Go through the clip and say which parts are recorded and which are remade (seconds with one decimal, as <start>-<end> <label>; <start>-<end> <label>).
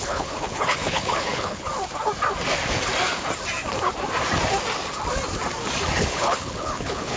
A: 0.0-1.7 remade; 1.7-6.0 recorded; 6.0-7.2 remade